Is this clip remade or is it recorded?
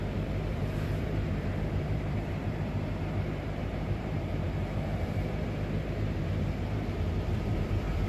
remade